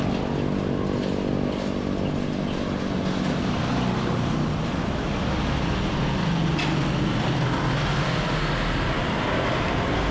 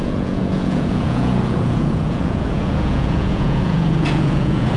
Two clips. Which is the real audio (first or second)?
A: first